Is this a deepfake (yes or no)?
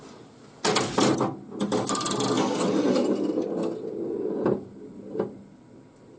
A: no